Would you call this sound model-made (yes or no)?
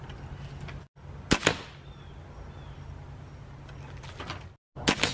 no